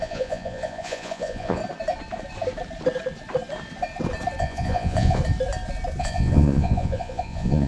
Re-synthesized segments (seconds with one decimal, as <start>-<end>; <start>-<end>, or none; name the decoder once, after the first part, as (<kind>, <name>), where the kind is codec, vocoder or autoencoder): 0.0-1.6 (vocoder, Vocos); 4.4-5.2; 6.0-7.7